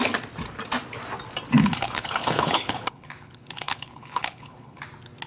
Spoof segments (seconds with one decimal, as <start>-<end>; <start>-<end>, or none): 1.6-4.8